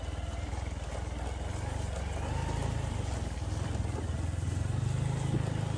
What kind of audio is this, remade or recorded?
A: recorded